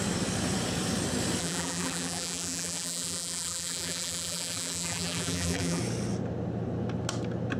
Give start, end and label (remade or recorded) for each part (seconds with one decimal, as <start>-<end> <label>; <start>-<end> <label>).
0.0-1.4 recorded; 1.4-5.8 remade; 5.8-7.6 recorded

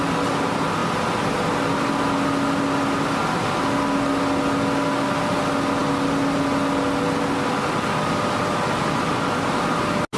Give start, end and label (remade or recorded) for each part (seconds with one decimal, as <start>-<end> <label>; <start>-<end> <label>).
0.0-10.2 recorded